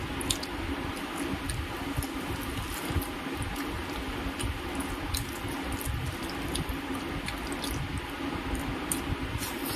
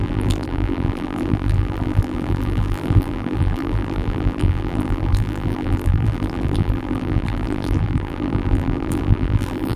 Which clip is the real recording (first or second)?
first